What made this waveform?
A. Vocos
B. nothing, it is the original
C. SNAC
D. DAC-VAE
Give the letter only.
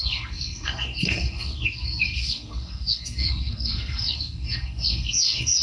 C